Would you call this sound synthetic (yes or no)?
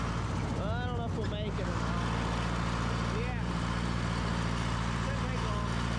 no